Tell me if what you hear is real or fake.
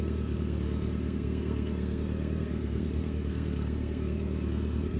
fake